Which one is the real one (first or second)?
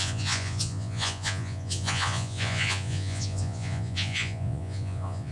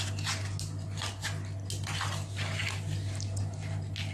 second